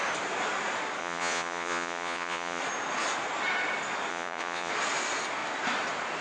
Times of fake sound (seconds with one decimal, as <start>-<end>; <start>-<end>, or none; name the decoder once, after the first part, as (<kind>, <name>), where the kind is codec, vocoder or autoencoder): 1.0-2.6 (vocoder, Vocos); 4.1-4.7